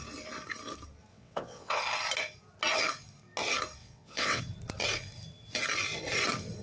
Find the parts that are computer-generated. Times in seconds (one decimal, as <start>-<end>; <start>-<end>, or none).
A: 1.1-1.8; 3.8-4.4